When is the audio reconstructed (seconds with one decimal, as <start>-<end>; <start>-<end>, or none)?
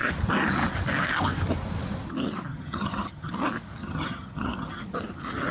2.5-3.3; 3.8-4.8